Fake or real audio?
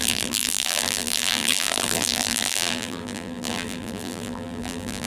fake